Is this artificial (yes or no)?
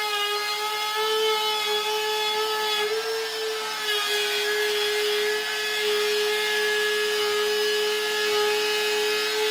no